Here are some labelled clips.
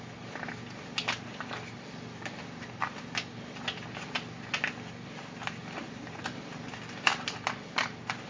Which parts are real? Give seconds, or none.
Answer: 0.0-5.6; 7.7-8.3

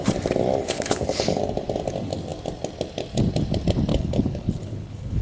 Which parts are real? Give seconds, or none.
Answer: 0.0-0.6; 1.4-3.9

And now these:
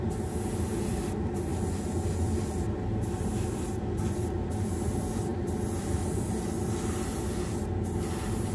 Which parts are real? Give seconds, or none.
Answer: 0.0-8.5